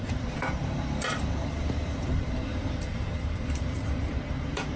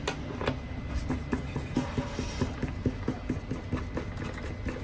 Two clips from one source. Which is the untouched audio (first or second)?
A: second